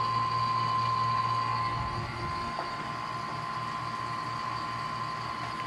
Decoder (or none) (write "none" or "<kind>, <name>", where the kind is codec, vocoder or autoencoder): none